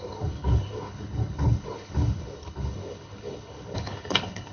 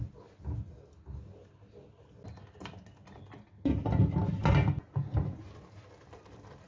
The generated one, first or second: first